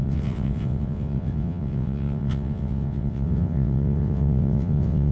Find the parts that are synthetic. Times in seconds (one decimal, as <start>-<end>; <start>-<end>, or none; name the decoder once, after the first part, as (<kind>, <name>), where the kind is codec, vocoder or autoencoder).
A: 0.0-5.1 (vocoder, WaveNeXt)